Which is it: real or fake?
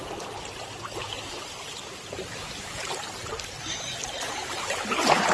real